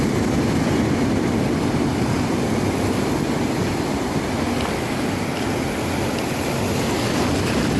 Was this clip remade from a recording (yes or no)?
no